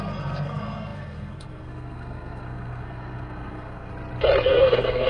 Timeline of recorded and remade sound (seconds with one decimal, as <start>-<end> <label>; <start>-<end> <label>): 0.0-3.9 remade; 3.9-4.5 recorded; 4.5-5.1 remade